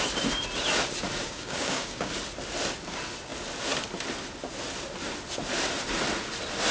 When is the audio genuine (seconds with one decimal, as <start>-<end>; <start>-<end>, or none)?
0.0-1.2; 2.1-6.7